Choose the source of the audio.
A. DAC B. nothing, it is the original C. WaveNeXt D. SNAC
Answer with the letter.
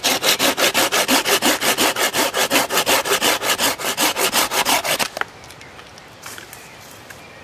B